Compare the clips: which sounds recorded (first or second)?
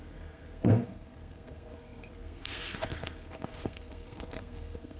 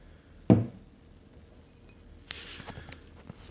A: second